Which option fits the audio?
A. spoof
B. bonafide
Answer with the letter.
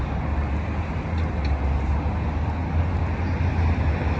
B